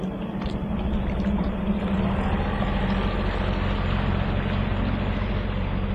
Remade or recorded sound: recorded